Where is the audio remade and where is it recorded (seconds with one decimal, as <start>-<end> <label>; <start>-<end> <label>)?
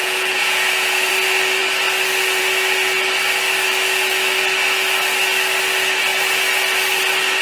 0.0-1.1 remade; 1.1-7.4 recorded